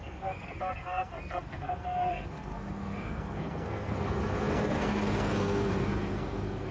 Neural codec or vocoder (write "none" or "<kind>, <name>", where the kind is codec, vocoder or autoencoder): codec, SNAC